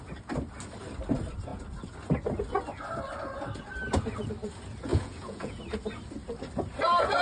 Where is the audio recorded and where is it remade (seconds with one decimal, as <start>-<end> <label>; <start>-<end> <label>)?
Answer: 0.0-4.9 recorded; 4.9-5.6 remade; 5.6-7.2 recorded